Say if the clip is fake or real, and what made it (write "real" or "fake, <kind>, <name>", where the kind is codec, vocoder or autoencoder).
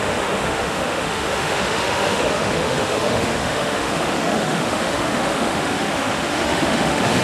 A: fake, autoencoder, DAC-VAE